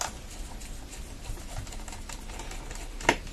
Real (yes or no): yes